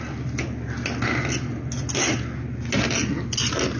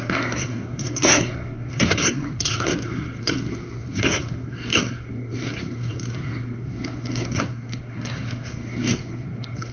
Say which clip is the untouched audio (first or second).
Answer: first